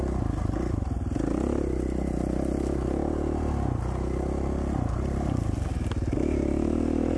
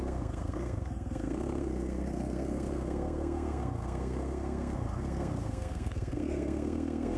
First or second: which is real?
first